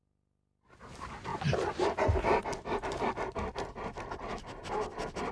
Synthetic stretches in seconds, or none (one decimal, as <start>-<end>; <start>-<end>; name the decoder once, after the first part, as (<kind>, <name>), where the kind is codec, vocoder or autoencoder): none